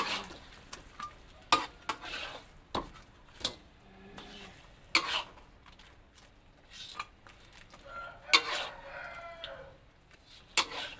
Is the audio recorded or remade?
recorded